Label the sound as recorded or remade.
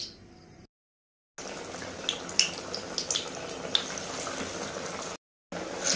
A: recorded